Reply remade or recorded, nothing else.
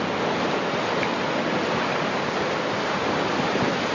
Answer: recorded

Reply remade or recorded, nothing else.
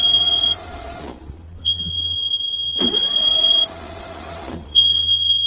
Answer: remade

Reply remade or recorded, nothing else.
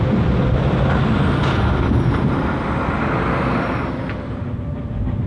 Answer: recorded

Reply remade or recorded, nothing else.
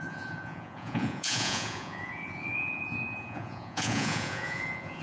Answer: remade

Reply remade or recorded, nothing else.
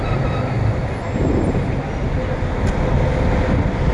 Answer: recorded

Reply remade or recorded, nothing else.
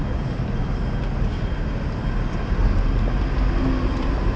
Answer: recorded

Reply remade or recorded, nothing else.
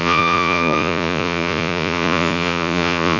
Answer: remade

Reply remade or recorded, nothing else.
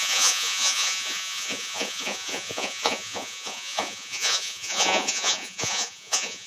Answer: remade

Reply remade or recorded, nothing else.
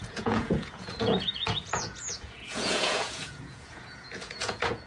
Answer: remade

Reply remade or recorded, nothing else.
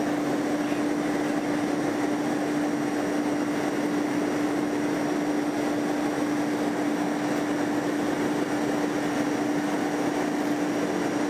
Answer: recorded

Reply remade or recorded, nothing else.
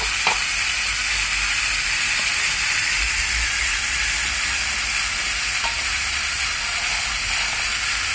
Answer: recorded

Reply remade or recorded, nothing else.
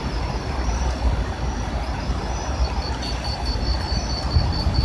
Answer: recorded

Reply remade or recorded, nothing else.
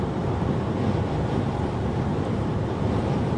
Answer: recorded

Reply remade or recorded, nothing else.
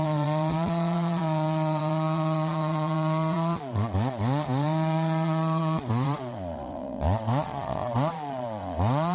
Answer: remade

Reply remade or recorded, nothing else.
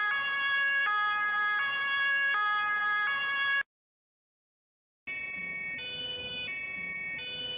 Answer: recorded